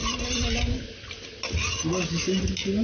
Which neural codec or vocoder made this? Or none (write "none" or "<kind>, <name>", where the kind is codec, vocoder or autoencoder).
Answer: none